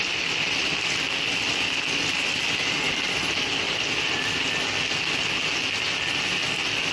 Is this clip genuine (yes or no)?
yes